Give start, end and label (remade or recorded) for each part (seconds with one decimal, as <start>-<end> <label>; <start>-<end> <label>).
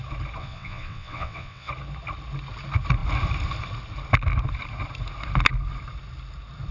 0.0-0.4 recorded; 0.4-1.7 remade; 1.7-6.7 recorded